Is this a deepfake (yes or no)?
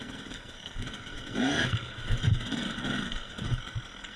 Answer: yes